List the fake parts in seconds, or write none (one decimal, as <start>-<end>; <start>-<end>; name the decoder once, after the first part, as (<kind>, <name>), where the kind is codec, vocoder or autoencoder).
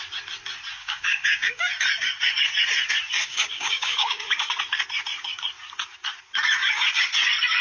0.8-1.7 (codec, DAC); 3.2-4.5